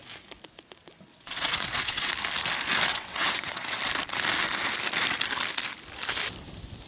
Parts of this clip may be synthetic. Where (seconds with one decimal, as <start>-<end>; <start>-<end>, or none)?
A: 1.1-2.1; 2.9-3.8